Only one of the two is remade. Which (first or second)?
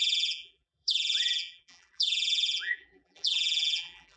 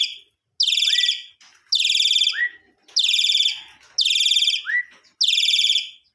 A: first